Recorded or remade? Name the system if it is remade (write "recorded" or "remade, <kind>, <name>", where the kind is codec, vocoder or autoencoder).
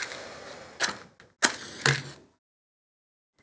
recorded